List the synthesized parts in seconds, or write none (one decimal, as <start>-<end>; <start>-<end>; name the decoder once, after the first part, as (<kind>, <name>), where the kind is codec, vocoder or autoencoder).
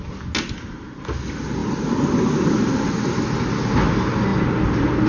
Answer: 1.6-2.6 (vocoder, BigVGAN v2); 4.3-5.1